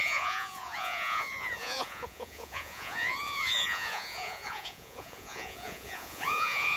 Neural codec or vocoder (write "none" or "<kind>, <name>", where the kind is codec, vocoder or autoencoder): vocoder, Vocos